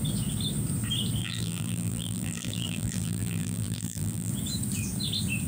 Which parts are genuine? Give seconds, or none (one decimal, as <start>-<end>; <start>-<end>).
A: 0.0-1.2; 4.3-5.5